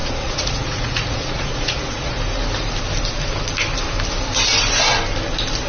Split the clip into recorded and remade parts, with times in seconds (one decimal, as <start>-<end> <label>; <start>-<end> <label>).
0.0-2.2 remade; 2.2-5.7 recorded